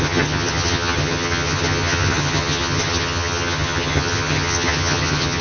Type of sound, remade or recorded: remade